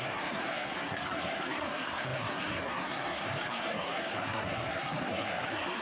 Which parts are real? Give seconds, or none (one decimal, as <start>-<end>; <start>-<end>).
none

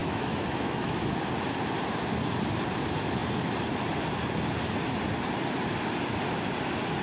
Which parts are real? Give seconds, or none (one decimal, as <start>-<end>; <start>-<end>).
1.2-7.0

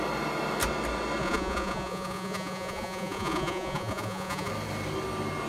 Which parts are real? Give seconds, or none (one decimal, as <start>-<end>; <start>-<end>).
0.0-1.2; 4.5-5.5